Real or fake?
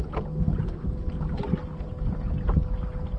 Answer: real